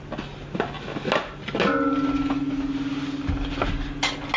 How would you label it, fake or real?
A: real